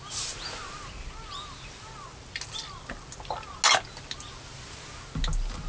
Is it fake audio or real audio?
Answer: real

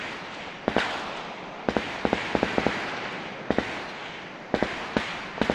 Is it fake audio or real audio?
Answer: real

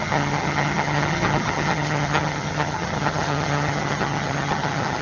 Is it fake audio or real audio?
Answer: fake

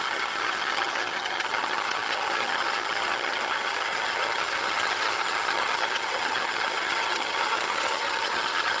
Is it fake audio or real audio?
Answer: fake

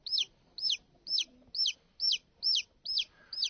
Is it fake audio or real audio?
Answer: fake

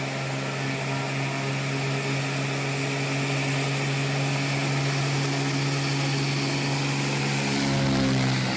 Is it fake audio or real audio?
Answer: real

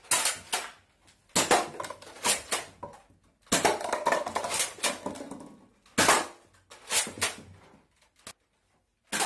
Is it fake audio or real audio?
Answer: real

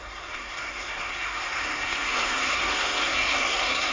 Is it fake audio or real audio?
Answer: fake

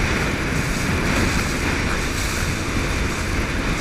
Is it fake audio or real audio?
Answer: real